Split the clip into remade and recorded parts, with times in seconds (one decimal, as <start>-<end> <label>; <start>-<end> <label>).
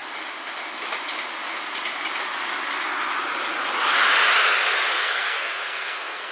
0.0-4.9 recorded; 4.9-6.3 remade